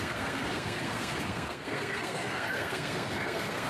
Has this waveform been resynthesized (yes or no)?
yes